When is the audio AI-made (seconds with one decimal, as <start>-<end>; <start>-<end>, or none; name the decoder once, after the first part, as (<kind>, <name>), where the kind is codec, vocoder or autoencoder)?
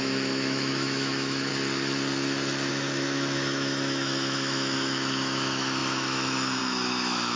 0.0-1.5 (autoencoder, DAC-VAE); 2.7-7.4